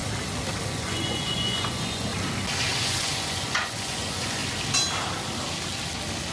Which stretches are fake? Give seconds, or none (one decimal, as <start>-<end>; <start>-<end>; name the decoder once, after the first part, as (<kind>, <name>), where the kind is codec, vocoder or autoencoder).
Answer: 0.7-2.1 (vocoder, Vocos); 2.6-4.4